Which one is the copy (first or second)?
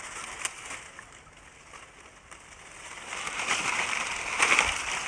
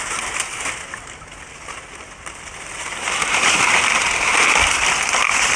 second